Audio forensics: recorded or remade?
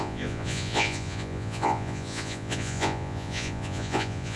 remade